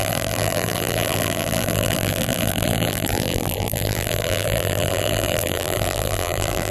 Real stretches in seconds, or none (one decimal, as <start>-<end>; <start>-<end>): none